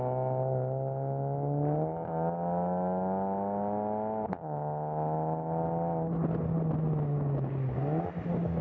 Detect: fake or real real